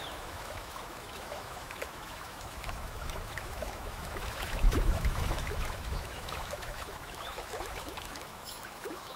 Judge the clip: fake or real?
fake